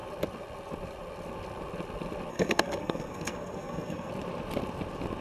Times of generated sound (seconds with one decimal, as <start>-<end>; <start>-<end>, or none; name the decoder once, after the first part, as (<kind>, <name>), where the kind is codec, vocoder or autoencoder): 2.3-4.1 (codec, SNAC)